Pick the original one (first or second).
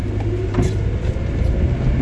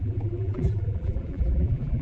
first